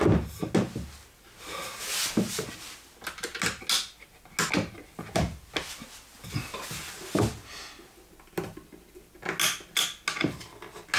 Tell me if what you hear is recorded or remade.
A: recorded